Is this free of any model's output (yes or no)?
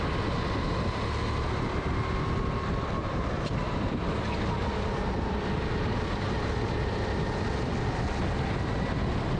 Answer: yes